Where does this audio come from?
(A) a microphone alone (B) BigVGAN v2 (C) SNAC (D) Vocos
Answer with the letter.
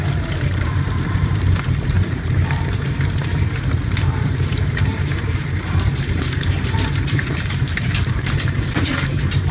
B